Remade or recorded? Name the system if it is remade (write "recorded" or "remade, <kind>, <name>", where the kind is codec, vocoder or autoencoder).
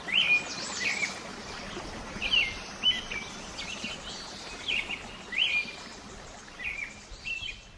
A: recorded